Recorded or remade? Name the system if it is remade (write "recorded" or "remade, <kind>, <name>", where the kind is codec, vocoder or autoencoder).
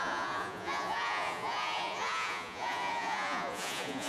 remade, vocoder, Vocos